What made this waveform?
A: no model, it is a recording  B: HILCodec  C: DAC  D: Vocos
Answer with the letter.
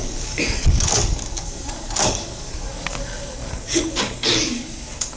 C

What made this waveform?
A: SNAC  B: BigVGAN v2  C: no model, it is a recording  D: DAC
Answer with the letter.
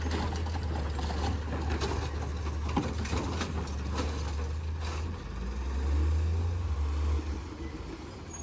C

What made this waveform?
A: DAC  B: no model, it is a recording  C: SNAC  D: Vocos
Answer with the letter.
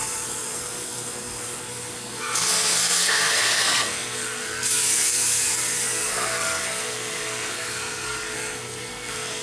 C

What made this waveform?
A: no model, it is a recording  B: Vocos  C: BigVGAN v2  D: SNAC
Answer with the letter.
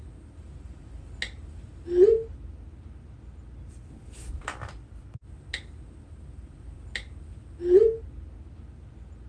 A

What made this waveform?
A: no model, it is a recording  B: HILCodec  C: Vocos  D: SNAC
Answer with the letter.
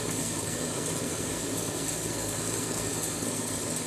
D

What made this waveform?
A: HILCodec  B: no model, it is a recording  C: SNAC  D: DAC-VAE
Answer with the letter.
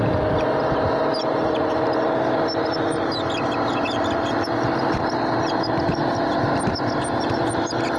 B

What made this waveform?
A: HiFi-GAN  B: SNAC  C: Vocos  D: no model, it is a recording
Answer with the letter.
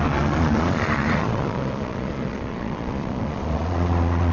C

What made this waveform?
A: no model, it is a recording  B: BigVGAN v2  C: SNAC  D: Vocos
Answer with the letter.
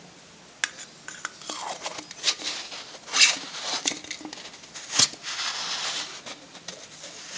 A